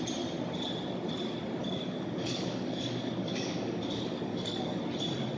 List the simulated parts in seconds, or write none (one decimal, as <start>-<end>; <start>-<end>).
1.6-4.8